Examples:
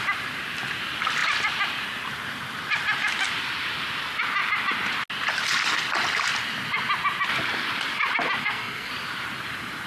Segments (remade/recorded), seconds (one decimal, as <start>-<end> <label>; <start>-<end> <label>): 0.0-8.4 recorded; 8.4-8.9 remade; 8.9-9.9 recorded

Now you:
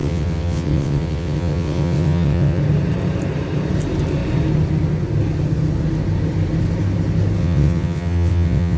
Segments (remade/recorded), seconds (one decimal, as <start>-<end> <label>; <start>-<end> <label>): 0.0-2.6 remade; 2.6-7.4 recorded; 7.4-8.8 remade

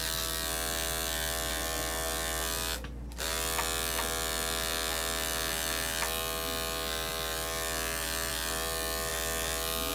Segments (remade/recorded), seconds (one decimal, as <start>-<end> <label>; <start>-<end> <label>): 0.0-9.9 recorded

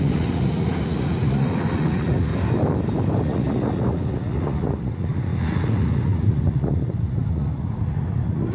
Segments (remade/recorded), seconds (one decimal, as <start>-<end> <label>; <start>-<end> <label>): 0.0-2.3 remade; 2.3-3.2 recorded; 3.2-8.5 remade

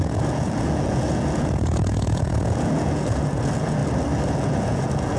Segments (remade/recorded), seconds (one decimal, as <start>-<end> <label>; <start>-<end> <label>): 0.0-3.8 remade; 3.8-4.3 recorded; 4.3-5.2 remade

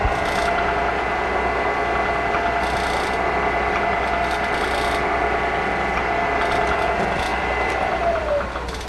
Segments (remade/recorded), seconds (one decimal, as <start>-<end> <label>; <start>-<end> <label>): 0.0-7.3 recorded; 7.3-8.3 remade; 8.3-8.9 recorded